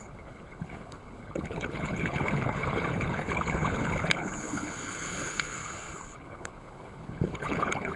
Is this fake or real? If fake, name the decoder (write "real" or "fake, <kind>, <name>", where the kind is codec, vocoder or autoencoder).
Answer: fake, codec, HILCodec